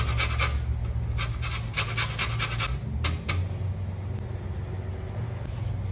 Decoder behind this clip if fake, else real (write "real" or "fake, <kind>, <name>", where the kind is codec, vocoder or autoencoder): real